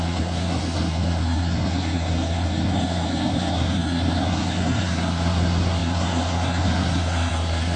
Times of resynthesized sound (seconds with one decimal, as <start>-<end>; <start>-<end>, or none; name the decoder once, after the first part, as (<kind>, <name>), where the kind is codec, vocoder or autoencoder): 0.0-7.8 (codec, SNAC)